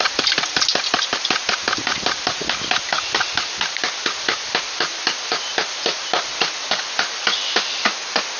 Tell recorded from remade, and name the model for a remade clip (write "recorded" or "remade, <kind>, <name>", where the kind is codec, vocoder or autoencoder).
recorded